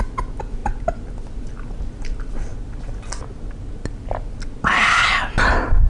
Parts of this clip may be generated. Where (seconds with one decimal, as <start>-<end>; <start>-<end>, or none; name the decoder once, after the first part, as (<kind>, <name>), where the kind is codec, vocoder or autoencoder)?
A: none